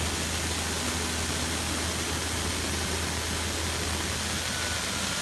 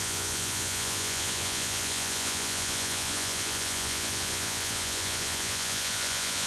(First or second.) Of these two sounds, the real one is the first